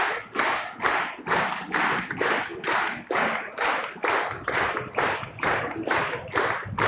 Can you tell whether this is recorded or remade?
recorded